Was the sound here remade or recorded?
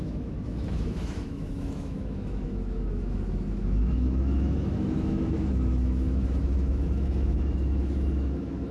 remade